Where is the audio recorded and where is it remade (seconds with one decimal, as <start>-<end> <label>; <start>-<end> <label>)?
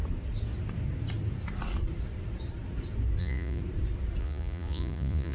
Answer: 0.0-3.2 recorded; 3.2-3.6 remade; 3.6-4.2 recorded; 4.2-5.3 remade